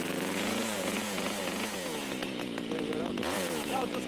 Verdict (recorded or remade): remade